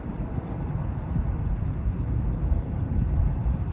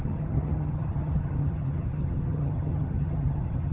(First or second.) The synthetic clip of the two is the second